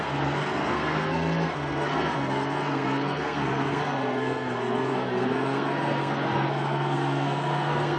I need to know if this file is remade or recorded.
remade